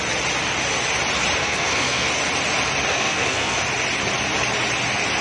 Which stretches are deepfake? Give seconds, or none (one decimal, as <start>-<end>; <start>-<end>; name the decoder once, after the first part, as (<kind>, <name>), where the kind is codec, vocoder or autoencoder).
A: 1.4-2.1 (codec, SNAC); 2.9-3.6